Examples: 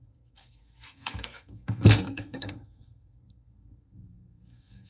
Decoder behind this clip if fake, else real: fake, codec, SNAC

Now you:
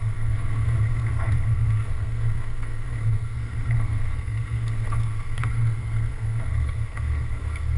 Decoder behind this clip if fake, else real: fake, codec, SNAC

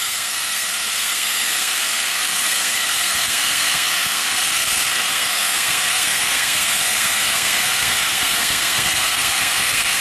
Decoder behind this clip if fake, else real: fake, codec, SNAC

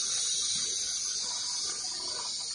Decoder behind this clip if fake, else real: real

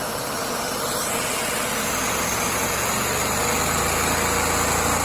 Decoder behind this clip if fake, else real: real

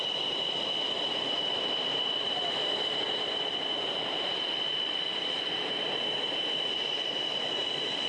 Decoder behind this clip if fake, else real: real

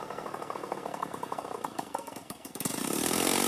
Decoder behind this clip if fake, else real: fake, codec, SNAC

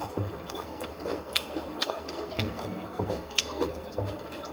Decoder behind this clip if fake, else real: fake, codec, SNAC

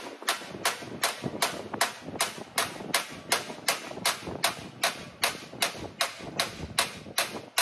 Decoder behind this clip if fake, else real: real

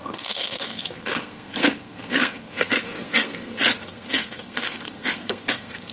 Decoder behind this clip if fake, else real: fake, codec, SNAC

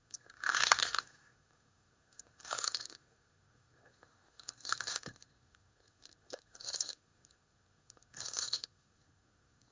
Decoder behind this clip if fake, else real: fake, codec, SNAC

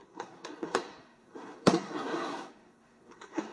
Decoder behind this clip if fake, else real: fake, codec, SNAC